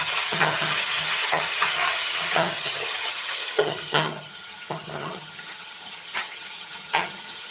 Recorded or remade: remade